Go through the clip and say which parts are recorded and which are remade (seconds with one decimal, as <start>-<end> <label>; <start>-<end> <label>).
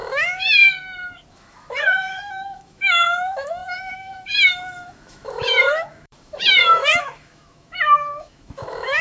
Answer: 0.0-0.6 remade; 0.6-1.3 recorded; 1.3-9.0 remade